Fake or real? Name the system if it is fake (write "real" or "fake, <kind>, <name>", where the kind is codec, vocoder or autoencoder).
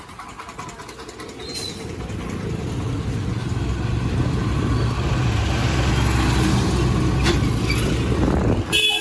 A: real